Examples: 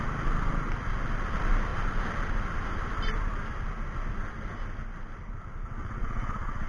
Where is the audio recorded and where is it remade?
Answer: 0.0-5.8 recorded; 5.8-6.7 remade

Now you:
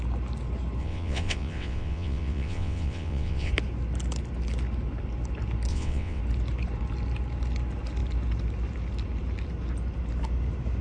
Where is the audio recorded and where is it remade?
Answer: 0.0-0.8 recorded; 0.8-3.5 remade; 3.5-5.7 recorded; 5.7-6.2 remade; 6.2-10.8 recorded

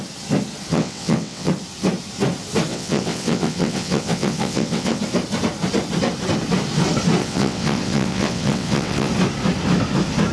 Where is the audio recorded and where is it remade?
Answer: 0.0-0.7 recorded; 0.7-1.5 remade; 1.5-2.7 recorded; 2.7-5.0 remade; 5.0-7.2 recorded; 7.2-9.1 remade; 9.1-10.3 recorded

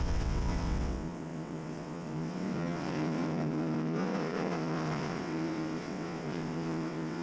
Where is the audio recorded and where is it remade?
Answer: 0.0-7.2 remade

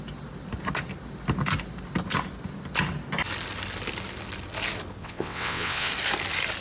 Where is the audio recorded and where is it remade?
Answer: 0.0-5.0 recorded; 5.0-5.9 remade; 5.9-6.6 recorded

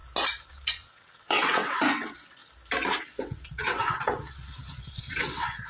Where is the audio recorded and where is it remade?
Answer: 0.0-0.5 recorded; 0.5-2.4 remade; 2.4-3.0 recorded; 3.0-5.7 remade